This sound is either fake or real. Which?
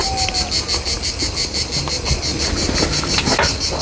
real